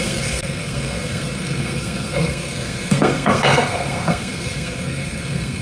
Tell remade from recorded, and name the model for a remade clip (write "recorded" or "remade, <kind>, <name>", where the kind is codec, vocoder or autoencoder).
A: remade, codec, SNAC